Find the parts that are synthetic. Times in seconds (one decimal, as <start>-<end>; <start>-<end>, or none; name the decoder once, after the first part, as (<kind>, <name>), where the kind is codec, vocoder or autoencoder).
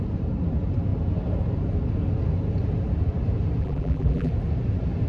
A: 3.6-4.3 (vocoder, BigVGAN v2)